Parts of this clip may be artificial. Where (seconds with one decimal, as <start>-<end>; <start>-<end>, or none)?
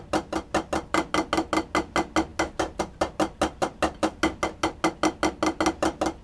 none